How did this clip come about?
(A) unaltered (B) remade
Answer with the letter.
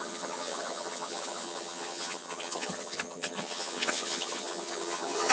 B